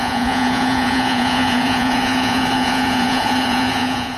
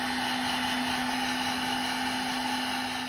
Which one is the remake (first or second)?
first